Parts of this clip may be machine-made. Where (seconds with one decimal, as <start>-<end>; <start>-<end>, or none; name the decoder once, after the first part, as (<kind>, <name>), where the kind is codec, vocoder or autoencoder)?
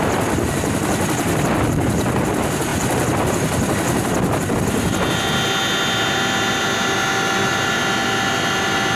none